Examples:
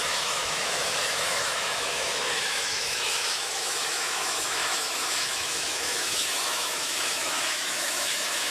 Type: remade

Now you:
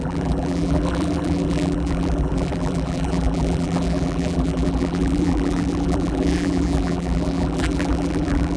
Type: remade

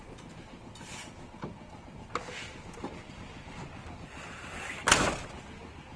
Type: recorded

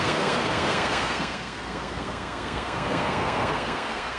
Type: remade